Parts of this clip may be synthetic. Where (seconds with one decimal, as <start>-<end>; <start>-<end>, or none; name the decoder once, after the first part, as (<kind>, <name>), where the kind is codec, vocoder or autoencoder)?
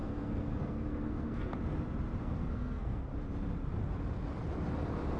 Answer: 0.0-1.5 (codec, SNAC); 2.2-3.1